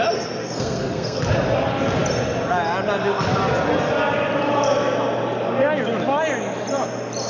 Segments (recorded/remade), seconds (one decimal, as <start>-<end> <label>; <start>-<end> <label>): 0.0-0.4 recorded; 0.4-1.2 remade; 1.2-7.3 recorded